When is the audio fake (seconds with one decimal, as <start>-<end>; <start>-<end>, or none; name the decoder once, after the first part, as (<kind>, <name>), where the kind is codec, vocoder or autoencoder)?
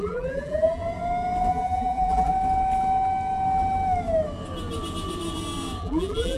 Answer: 0.0-0.8 (vocoder, BigVGAN v2); 1.5-2.3; 5.8-6.4